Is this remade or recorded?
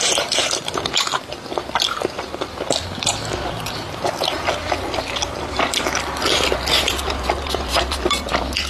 recorded